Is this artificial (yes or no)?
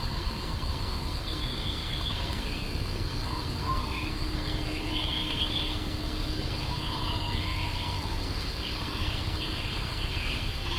yes